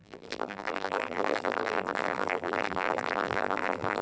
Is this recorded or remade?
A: remade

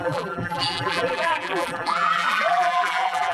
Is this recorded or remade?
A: remade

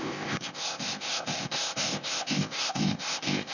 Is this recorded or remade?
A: remade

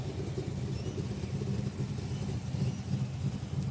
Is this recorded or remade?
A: recorded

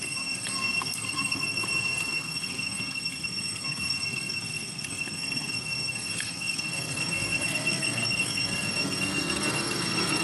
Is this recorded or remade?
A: remade